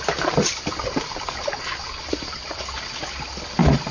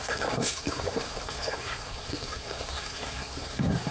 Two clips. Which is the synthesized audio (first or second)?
second